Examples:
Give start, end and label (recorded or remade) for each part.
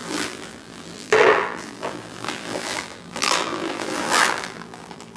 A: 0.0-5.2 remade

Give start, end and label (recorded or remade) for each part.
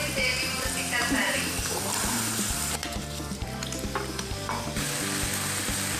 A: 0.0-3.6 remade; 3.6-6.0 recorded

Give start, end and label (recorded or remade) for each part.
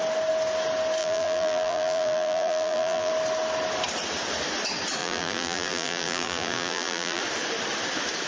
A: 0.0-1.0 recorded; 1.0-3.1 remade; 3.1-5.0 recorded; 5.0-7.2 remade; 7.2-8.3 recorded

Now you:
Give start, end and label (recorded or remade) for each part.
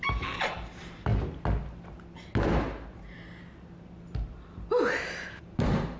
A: 0.0-1.1 remade; 1.1-4.7 recorded; 4.7-6.0 remade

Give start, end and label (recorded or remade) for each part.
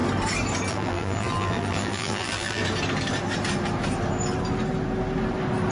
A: 0.0-0.7 recorded; 0.7-2.6 remade; 2.6-5.7 recorded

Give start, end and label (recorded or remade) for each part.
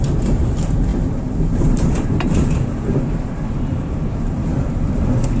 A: 0.0-4.5 remade; 4.5-5.4 recorded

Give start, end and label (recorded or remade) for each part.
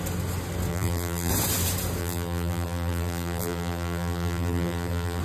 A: 0.0-0.7 recorded; 0.7-1.3 remade; 1.3-2.0 recorded; 2.0-5.2 remade